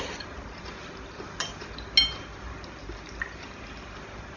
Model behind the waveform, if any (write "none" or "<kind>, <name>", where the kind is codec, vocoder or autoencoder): none